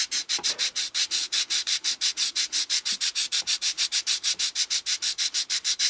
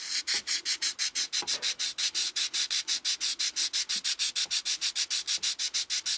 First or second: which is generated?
first